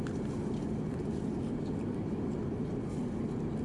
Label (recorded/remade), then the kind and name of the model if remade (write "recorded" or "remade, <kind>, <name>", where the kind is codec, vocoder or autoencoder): recorded